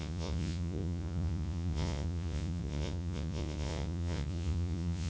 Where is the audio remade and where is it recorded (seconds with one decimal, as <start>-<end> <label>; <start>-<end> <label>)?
0.0-5.1 remade